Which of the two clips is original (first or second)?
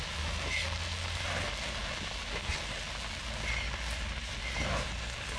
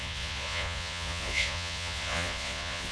first